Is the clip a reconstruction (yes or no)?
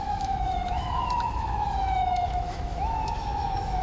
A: yes